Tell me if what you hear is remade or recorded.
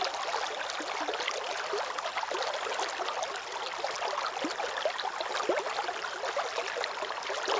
recorded